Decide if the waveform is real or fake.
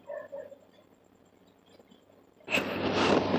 real